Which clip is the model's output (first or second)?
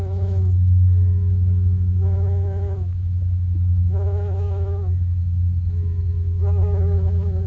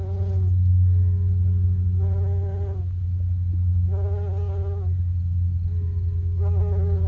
first